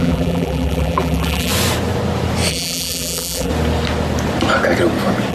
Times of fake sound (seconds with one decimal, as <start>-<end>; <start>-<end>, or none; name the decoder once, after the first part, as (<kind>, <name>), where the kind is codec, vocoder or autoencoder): 0.0-1.5 (vocoder, BigVGAN v2); 2.5-3.5